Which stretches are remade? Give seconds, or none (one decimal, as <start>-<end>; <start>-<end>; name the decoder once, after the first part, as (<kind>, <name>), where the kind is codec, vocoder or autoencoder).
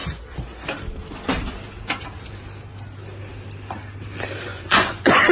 4.5-5.3 (vocoder, Vocos)